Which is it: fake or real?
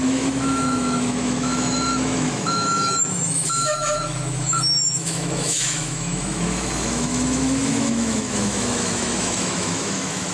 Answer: fake